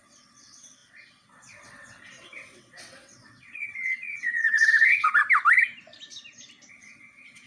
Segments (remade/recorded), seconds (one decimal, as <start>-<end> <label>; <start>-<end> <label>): 0.0-5.2 remade; 5.2-6.7 recorded; 6.7-7.5 remade